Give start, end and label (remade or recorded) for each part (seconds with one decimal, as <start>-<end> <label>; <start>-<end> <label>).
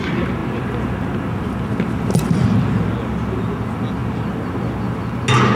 0.0-5.6 recorded